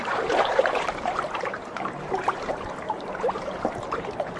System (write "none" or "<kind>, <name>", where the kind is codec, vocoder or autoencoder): vocoder, BigVGAN v2